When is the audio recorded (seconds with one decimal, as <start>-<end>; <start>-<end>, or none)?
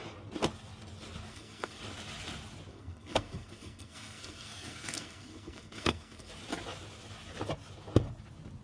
0.0-1.3; 1.8-2.7; 6.3-8.6